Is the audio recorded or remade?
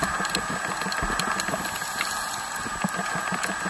recorded